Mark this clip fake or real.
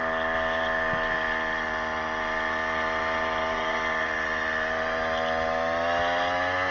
real